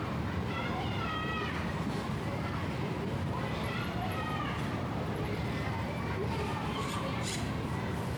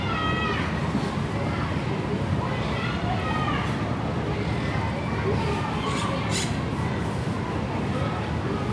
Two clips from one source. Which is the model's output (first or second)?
first